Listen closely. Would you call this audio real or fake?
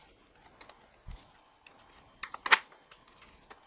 real